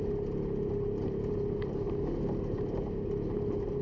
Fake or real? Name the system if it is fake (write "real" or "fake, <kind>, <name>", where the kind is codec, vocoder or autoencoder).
real